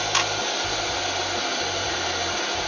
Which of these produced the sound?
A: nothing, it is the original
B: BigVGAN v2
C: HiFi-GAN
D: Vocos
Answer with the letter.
A